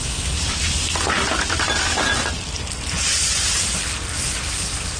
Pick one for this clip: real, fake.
real